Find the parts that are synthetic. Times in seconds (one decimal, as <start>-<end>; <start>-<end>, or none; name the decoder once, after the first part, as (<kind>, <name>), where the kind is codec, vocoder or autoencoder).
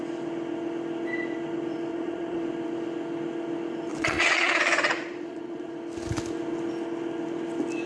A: 1.9-2.4 (vocoder, Vocos); 3.9-5.7